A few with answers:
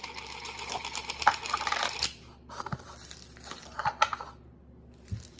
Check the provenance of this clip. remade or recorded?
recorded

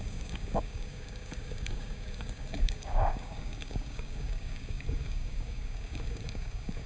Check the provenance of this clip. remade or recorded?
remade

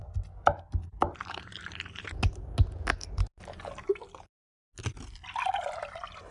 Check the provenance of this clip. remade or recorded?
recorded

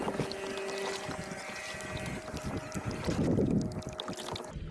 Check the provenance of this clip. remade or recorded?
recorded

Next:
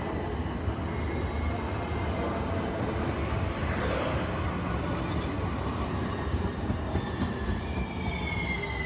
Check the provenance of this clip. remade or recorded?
recorded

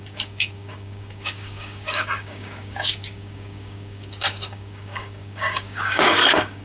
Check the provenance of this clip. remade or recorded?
remade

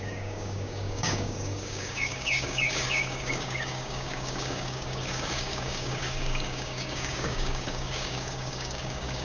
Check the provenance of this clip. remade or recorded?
remade